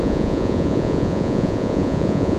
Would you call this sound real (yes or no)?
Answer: no